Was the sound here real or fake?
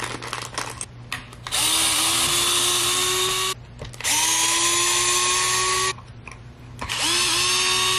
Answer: real